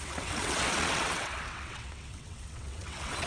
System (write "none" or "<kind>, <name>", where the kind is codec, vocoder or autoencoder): vocoder, WaveNeXt